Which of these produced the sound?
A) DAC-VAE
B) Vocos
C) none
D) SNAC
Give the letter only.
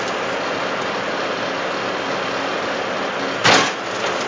C